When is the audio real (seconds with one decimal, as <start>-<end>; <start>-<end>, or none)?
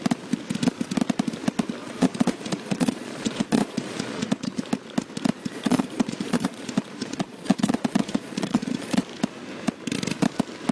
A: 0.0-1.8; 4.6-5.4; 9.0-10.7